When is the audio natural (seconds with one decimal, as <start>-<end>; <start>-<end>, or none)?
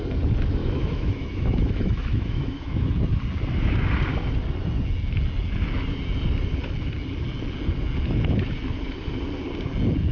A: 0.0-0.6; 2.9-10.1